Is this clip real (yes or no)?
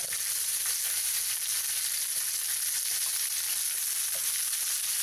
yes